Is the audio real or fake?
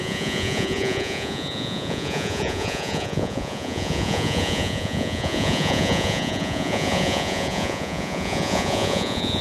fake